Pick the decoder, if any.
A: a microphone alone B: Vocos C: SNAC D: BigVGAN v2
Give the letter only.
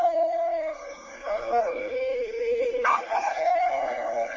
C